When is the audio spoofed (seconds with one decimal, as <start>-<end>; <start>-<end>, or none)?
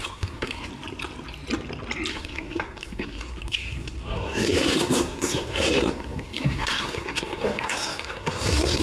0.0-0.7; 2.1-8.8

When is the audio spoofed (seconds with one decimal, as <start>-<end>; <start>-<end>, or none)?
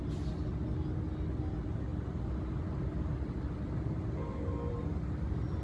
none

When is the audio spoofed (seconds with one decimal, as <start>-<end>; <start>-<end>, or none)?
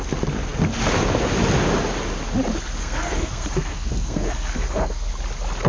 2.8-5.1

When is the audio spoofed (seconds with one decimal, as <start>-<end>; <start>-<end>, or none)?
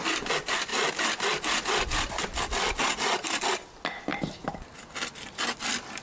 none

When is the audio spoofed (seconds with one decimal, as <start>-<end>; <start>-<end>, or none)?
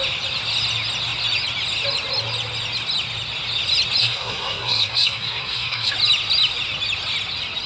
4.0-5.9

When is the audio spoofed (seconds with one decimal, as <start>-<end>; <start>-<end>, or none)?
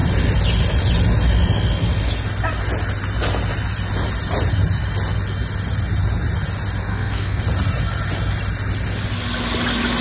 6.9-7.4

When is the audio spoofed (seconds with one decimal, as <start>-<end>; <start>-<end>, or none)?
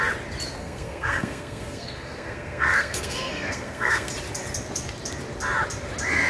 0.6-4.1